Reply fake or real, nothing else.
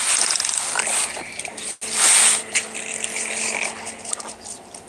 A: real